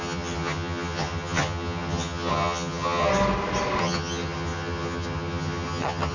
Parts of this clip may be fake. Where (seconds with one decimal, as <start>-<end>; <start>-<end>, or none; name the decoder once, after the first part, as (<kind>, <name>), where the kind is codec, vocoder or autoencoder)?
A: 0.0-3.1 (vocoder, HiFi-GAN); 3.8-6.1